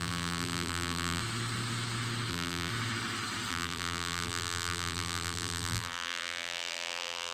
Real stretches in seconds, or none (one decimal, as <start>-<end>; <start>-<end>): 1.2-2.3; 2.7-3.5